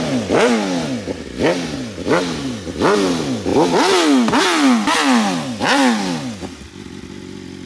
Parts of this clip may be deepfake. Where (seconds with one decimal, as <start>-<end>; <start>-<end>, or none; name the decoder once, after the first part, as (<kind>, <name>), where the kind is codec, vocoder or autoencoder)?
none